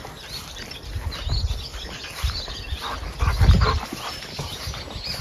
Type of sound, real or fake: real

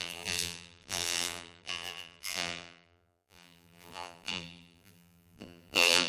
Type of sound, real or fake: fake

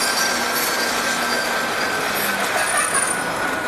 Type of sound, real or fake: real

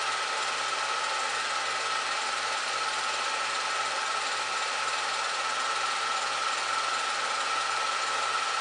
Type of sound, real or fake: real